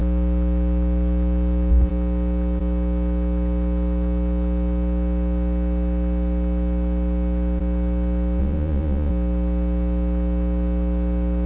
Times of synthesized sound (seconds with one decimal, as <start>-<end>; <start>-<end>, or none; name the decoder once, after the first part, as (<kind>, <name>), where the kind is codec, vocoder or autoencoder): 8.4-9.1 (vocoder, Vocos)